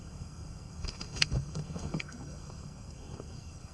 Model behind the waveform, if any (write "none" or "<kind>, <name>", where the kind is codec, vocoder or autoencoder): codec, SNAC